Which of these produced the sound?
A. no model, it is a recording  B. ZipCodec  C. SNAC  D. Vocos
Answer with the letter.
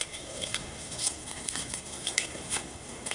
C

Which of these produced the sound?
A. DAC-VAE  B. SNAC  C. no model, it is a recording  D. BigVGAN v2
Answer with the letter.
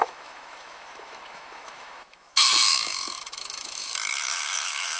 A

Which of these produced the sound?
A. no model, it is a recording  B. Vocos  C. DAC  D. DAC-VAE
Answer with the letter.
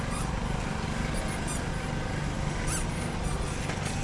A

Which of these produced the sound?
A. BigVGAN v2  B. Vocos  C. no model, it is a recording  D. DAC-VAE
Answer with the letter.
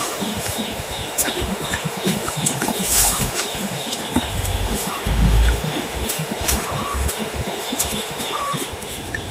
D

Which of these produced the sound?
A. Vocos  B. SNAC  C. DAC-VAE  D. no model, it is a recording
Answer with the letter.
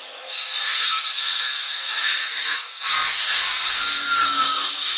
B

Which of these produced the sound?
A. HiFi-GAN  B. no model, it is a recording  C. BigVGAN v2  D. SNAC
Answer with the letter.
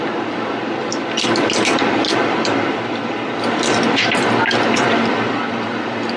C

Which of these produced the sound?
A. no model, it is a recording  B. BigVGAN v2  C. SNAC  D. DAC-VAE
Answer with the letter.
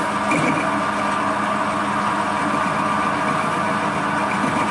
A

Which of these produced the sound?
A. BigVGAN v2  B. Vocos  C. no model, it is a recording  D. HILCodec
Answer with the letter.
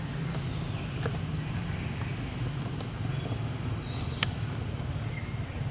C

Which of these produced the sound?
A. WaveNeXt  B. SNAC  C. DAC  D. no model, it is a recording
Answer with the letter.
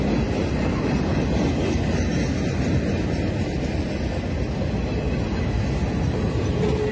D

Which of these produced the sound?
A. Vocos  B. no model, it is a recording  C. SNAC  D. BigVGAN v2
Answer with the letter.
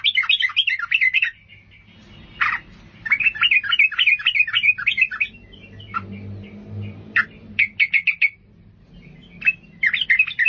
B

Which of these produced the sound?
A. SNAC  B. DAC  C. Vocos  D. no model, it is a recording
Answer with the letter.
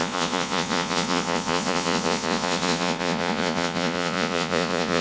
C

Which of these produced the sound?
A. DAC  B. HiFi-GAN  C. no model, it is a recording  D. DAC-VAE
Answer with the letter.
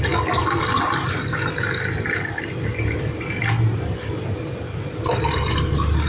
C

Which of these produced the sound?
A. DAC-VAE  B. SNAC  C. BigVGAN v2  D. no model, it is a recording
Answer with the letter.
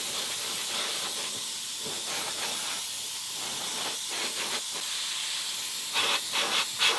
D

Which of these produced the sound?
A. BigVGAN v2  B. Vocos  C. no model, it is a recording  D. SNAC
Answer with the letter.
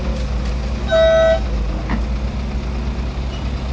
C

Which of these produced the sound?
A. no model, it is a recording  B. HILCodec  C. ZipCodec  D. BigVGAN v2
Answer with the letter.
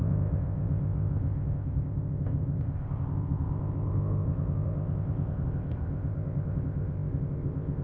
C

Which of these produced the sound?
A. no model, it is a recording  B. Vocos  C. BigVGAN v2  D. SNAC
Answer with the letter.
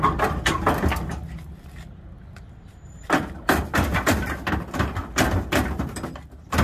A